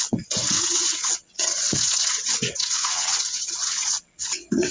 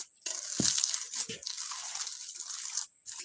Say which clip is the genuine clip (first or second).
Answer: second